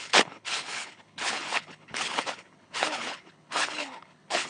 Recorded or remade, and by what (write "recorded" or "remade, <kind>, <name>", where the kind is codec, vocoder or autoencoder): remade, codec, HILCodec